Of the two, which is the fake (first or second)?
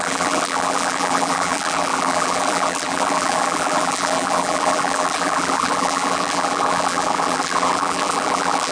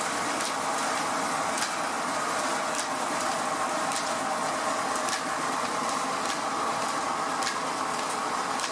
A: first